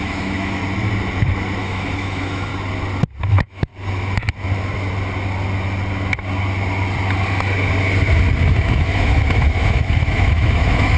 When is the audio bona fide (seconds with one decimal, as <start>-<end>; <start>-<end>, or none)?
0.6-1.6; 2.5-3.3; 3.7-8.5